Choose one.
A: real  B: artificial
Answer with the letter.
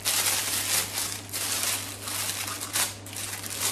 A